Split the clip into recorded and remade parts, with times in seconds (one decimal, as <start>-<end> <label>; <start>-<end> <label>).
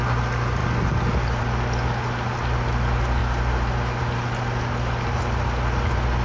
0.0-6.2 recorded